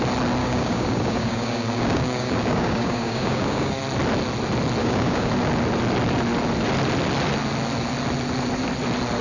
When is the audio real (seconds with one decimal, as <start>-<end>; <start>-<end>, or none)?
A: 0.0-0.4; 3.8-4.8; 5.3-9.2